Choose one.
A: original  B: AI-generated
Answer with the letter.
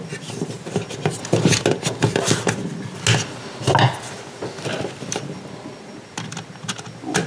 A